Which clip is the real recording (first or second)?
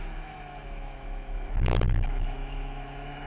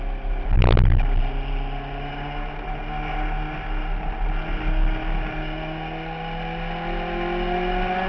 second